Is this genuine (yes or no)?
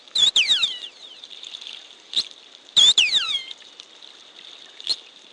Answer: no